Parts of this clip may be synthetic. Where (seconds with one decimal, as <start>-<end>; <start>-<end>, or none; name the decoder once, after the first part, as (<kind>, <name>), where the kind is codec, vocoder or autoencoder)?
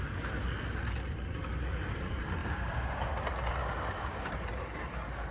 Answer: 2.4-3.1 (codec, DAC); 3.6-4.3